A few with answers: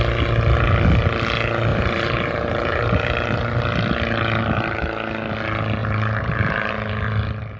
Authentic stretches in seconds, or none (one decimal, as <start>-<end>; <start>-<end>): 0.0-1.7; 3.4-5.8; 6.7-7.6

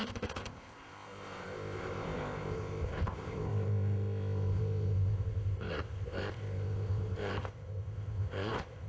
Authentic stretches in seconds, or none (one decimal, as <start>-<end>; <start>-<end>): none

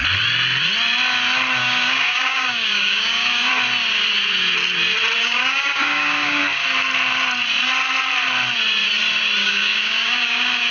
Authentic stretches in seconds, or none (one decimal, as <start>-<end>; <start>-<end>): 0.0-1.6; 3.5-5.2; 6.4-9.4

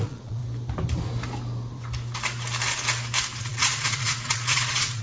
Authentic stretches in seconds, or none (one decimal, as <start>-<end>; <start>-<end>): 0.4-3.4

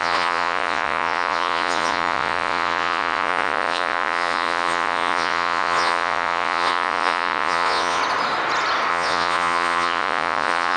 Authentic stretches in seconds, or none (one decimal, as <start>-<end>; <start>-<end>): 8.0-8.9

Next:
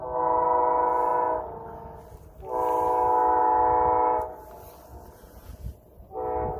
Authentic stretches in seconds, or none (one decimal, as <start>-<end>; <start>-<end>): 0.0-4.9; 6.0-6.6